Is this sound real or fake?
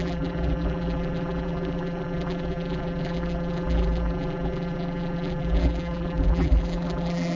fake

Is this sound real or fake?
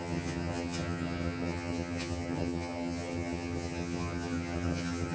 fake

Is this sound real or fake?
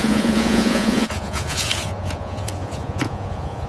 fake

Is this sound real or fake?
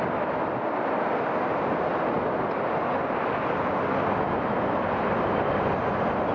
real